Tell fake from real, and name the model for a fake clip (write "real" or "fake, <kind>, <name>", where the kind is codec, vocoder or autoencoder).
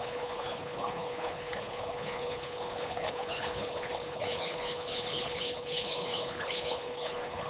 fake, codec, HILCodec